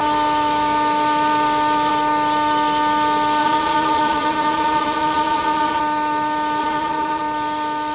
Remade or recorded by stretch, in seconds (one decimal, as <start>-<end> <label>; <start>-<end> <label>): 0.0-3.4 recorded; 3.4-5.8 remade; 5.8-6.6 recorded; 6.6-7.2 remade; 7.2-7.9 recorded